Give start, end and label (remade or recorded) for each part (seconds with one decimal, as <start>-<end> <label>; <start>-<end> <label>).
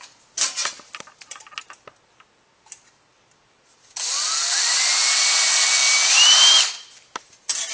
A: 0.0-7.7 recorded